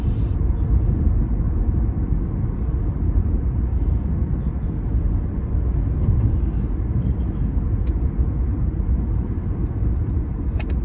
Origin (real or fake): real